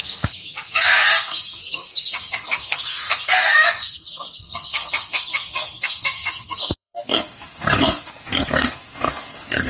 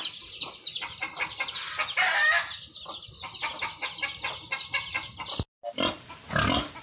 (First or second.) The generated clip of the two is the first